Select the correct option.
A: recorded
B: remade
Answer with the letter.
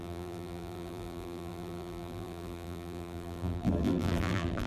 B